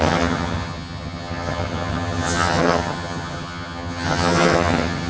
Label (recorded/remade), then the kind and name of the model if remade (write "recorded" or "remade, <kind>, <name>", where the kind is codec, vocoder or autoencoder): remade, vocoder, HiFi-GAN